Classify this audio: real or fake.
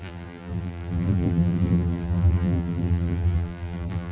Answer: fake